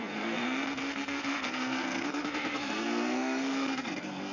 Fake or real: fake